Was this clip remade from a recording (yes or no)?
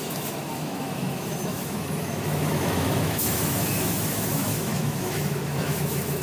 yes